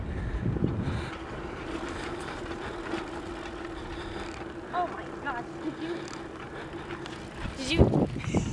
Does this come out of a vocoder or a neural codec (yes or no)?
no